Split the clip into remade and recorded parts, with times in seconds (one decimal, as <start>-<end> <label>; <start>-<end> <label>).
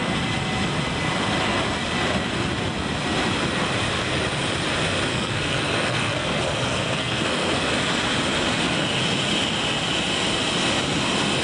0.0-5.1 recorded; 5.1-7.7 remade; 7.7-11.4 recorded